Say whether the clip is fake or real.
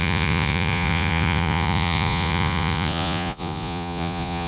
fake